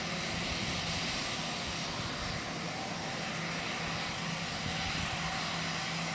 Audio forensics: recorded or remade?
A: recorded